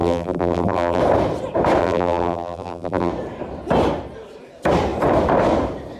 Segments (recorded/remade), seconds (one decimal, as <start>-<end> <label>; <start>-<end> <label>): 0.0-1.0 remade; 1.0-1.8 recorded; 1.8-3.1 remade; 3.1-6.0 recorded